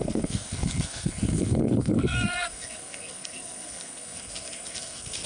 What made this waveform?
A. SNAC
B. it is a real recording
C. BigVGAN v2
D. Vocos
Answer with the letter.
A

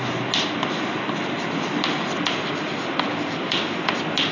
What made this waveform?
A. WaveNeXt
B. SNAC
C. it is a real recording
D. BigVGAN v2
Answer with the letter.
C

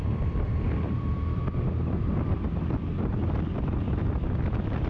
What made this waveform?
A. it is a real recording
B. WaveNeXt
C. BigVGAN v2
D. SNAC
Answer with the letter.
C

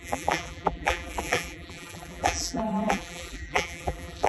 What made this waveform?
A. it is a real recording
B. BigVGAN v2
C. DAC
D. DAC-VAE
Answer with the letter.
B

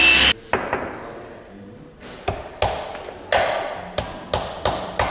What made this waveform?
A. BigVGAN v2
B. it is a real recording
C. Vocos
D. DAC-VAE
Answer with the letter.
B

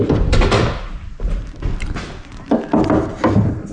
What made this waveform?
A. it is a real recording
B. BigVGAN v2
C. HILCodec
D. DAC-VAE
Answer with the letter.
A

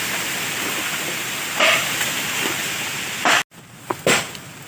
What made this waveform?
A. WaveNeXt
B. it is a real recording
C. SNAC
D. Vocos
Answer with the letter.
B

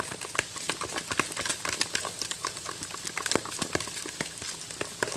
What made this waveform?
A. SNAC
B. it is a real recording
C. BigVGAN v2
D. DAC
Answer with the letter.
B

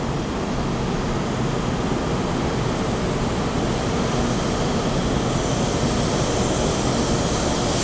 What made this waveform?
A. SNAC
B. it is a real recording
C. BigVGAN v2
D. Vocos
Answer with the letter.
B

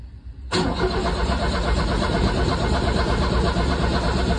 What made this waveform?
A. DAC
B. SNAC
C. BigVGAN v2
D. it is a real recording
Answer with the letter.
D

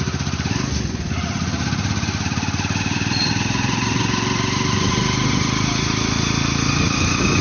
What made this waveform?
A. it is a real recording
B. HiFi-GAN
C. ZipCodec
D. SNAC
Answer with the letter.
A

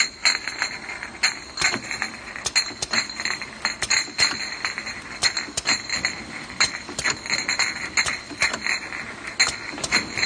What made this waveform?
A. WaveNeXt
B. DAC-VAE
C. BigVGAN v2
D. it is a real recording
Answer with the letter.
D